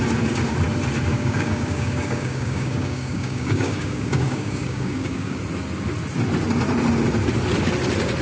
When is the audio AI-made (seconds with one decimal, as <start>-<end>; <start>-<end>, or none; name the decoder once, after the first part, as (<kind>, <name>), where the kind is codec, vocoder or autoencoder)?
1.1-5.4 (codec, DAC)